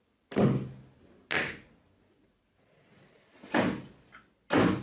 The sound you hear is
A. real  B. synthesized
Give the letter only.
A